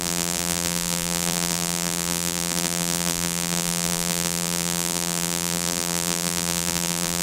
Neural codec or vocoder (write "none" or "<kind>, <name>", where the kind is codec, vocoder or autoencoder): vocoder, BigVGAN v2